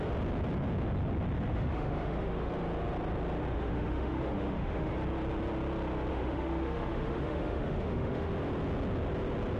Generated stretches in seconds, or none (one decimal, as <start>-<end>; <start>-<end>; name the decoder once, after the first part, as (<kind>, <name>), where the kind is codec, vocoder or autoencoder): 1.5-2.5 (autoencoder, DAC-VAE); 3.5-4.9; 6.1-8.3